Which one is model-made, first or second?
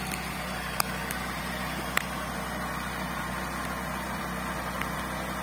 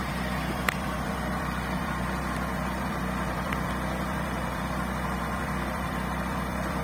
second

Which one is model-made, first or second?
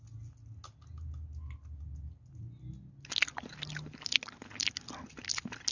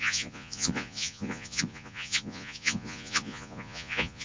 second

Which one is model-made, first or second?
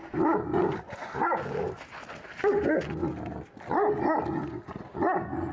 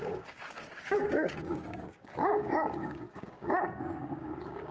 second